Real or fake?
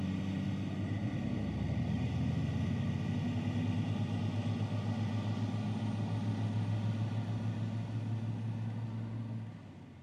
real